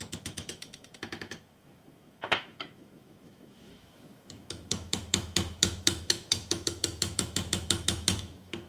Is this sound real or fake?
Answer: fake